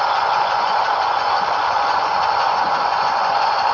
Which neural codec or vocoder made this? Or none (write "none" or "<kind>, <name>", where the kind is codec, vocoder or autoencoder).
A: vocoder, Vocos